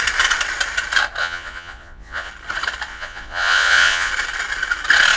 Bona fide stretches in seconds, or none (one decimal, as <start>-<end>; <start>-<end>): 0.0-1.2; 2.3-2.9; 4.1-5.2